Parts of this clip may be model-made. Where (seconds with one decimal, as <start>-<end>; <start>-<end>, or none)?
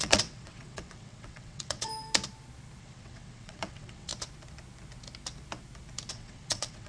0.0-1.9; 2.8-4.1; 6.1-6.9